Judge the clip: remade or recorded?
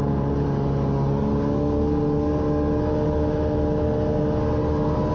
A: recorded